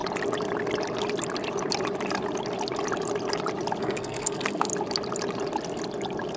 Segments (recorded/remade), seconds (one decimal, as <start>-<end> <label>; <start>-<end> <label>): 0.0-3.8 recorded; 3.8-4.7 remade; 4.7-6.4 recorded